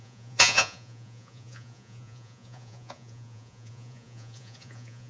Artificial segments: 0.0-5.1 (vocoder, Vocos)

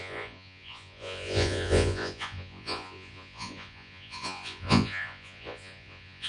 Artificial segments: 0.0-6.3 (vocoder, Vocos)